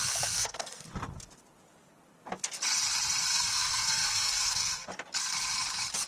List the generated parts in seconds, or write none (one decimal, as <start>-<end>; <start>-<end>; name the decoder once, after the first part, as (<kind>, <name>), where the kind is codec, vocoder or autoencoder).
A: 0.0-0.9 (codec, SNAC); 3.3-4.9